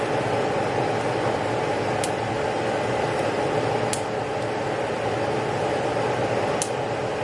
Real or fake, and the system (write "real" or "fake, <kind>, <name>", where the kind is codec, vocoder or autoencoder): real